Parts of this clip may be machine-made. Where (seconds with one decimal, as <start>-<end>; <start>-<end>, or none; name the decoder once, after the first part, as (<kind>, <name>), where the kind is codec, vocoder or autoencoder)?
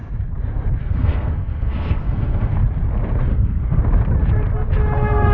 0.8-2.5 (codec, SNAC); 3.3-3.8